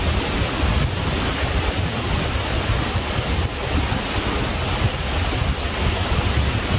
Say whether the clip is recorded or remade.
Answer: recorded